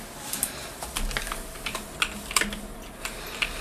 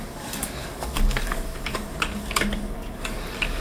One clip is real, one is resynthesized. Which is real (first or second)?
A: first